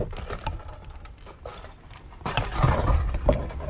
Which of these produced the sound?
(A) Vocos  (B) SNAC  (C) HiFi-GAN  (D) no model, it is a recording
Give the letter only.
D